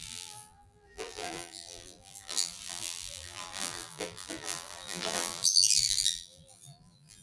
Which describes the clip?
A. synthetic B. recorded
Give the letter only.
A